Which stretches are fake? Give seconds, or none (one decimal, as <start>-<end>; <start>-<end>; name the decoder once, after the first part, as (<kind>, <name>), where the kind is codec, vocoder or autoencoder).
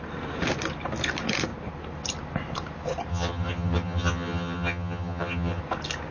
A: 3.1-5.6 (vocoder, HiFi-GAN)